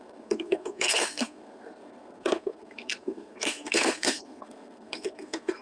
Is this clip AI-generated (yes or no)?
yes